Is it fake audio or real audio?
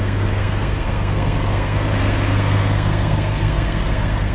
fake